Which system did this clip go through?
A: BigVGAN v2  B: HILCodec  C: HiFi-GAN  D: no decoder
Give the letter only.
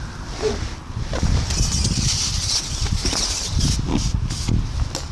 D